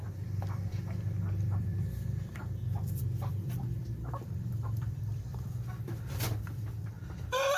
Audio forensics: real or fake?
fake